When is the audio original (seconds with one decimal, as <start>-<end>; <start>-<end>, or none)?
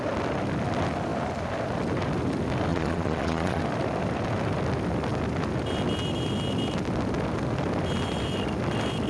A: 0.0-2.7; 3.6-9.1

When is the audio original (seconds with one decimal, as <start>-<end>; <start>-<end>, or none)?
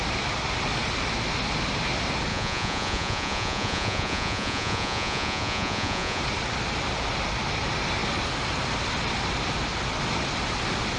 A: 0.0-2.3; 6.2-11.0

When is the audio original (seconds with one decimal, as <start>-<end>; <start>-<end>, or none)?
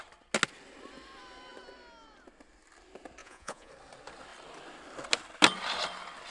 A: 0.0-3.2; 3.7-6.3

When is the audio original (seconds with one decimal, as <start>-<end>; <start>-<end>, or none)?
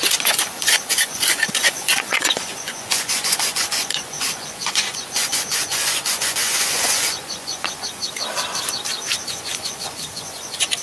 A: 8.0-9.3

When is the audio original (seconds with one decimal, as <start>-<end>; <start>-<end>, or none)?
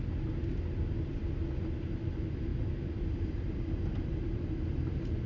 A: 0.0-5.3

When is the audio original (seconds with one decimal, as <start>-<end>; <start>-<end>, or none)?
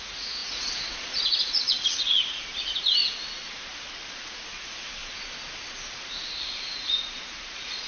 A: 5.0-6.1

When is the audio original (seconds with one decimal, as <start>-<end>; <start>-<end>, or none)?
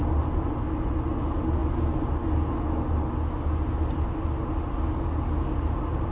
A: 0.0-6.1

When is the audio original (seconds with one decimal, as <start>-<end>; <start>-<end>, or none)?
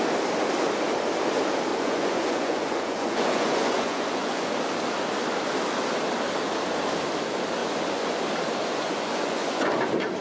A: 0.0-1.7; 4.5-7.6; 8.2-8.6; 9.7-10.2